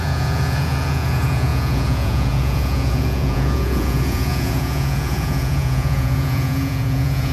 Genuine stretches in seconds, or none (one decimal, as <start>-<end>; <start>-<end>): none